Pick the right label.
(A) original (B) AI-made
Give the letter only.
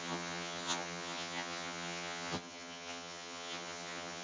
B